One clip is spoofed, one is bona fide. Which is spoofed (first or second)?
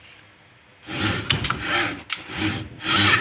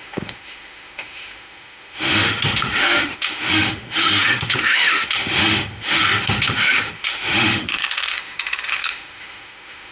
second